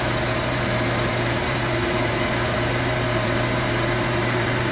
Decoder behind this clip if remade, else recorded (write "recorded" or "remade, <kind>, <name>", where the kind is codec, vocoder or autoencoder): remade, vocoder, BigVGAN v2